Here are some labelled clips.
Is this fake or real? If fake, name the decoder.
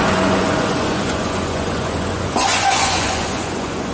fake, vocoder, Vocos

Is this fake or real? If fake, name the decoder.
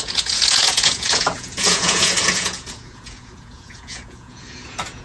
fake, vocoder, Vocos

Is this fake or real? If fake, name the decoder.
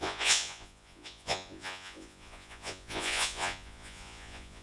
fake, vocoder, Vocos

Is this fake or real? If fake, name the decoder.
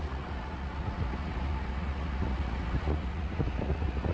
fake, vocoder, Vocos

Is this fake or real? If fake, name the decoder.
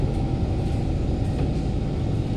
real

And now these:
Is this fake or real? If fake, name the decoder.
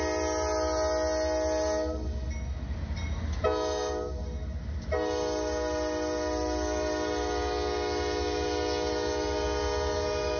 real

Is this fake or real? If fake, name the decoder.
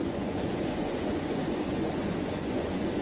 fake, vocoder, Vocos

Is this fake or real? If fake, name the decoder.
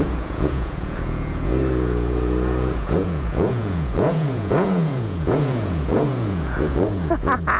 fake, vocoder, Vocos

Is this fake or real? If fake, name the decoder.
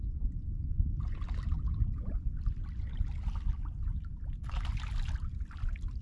real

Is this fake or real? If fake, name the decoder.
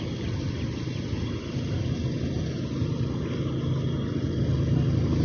real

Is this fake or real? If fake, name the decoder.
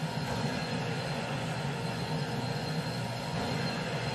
fake, vocoder, Vocos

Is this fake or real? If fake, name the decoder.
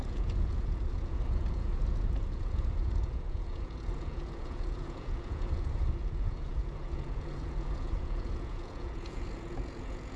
fake, vocoder, Vocos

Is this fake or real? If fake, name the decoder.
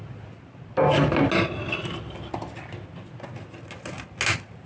real